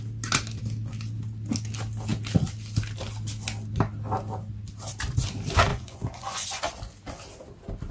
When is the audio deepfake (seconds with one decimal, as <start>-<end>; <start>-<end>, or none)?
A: 5.7-6.7